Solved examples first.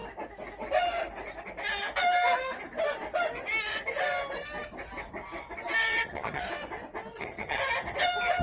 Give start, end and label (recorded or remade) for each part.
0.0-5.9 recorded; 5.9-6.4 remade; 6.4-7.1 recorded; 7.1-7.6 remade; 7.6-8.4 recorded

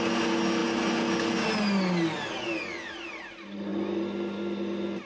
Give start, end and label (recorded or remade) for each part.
0.0-5.0 recorded

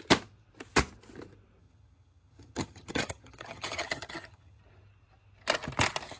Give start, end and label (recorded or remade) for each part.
0.0-1.6 recorded; 1.6-4.6 remade; 4.6-6.2 recorded

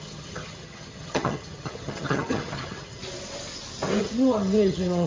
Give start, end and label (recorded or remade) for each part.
0.0-3.0 remade; 3.0-4.0 recorded; 4.0-5.1 remade

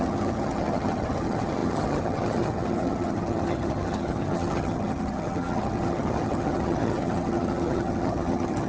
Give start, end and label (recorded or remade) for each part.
0.0-8.7 remade

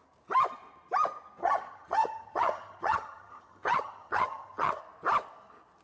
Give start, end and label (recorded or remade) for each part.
0.0-1.4 recorded; 1.4-4.8 remade; 4.8-5.8 recorded